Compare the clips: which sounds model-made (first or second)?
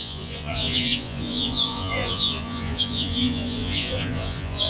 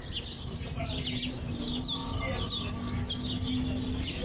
first